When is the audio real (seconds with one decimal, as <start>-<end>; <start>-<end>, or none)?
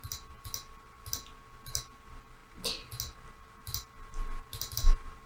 0.0-5.3